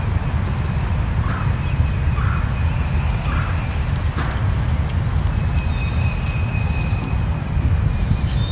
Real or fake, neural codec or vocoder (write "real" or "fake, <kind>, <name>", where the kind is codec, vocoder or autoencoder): real